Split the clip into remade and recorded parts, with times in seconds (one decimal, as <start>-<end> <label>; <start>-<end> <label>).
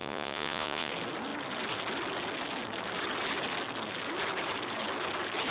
0.0-0.9 remade; 0.9-5.5 recorded